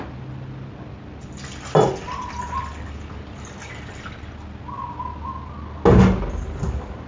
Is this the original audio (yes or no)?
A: yes